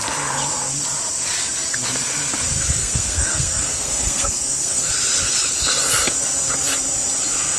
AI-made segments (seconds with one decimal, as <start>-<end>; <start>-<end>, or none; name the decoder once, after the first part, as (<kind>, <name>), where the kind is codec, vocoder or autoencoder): 2.8-4.9 (codec, SNAC)